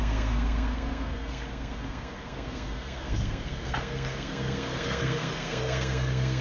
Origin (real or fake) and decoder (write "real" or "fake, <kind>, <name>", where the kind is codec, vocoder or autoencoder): fake, codec, SNAC